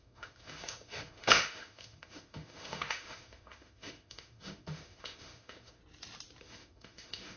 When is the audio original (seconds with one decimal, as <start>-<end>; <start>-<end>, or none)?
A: 5.8-6.4